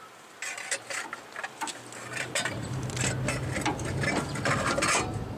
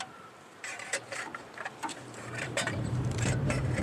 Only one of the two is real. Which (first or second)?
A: first